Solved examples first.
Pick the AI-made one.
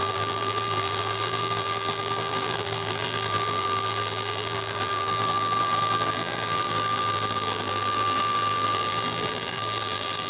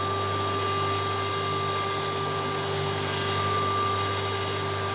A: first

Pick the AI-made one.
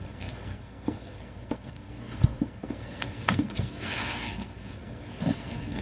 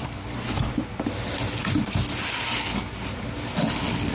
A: first